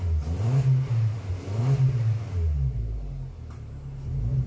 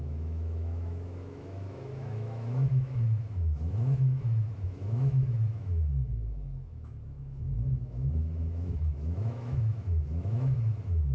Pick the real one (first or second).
first